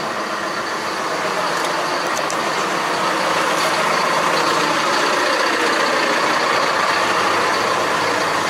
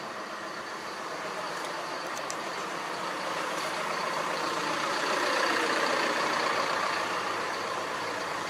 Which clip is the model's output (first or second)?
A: second